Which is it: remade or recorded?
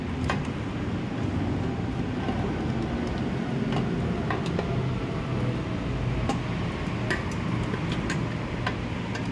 recorded